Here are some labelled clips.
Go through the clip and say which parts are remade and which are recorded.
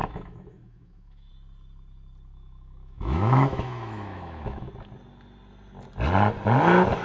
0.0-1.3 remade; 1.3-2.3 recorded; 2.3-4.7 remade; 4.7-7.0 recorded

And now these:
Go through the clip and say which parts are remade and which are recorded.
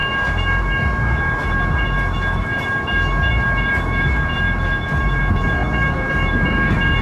0.0-7.0 remade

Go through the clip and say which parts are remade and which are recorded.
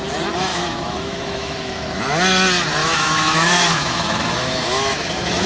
0.0-0.5 recorded; 0.5-2.0 remade; 2.0-2.8 recorded; 2.8-5.5 remade